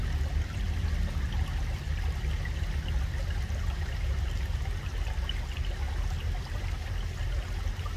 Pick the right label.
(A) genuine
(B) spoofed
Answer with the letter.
A